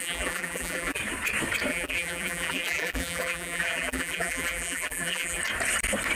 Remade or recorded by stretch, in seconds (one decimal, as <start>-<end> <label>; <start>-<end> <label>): 0.0-1.0 remade; 1.0-1.7 recorded; 1.7-5.4 remade; 5.4-6.2 recorded